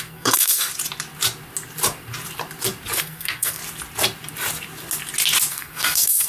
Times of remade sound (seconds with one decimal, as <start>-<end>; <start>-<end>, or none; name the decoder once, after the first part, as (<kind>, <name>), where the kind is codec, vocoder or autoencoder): 0.0-0.7 (codec, SNAC); 3.0-3.6; 5.5-6.3